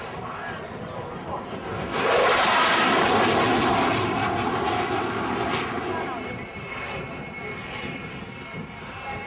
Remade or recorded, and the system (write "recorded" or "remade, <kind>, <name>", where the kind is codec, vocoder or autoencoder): recorded